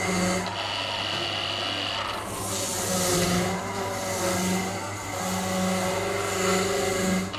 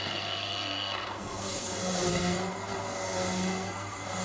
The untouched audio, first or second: first